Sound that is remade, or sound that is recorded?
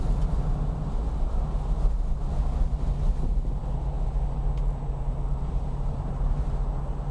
recorded